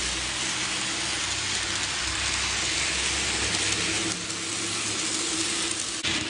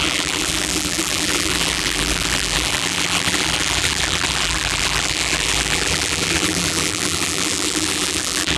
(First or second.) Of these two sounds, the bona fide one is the first